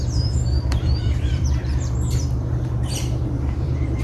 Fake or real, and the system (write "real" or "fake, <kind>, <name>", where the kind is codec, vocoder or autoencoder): fake, vocoder, BigVGAN v2